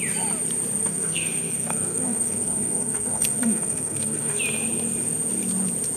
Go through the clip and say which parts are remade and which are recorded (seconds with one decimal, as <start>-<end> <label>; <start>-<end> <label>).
0.0-0.8 recorded; 0.8-4.4 remade; 4.4-6.0 recorded